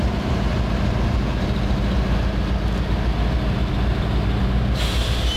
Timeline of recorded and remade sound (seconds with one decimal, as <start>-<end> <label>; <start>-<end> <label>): 0.0-0.5 remade; 0.5-3.7 recorded; 3.7-5.4 remade